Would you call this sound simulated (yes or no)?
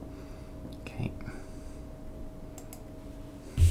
no